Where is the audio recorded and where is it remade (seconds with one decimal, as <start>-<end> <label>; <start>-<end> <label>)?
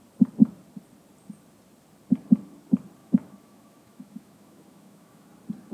0.0-3.0 recorded; 3.0-5.3 remade; 5.3-5.7 recorded